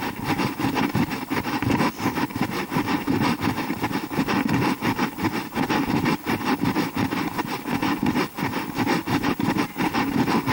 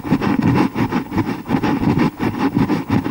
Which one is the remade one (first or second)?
first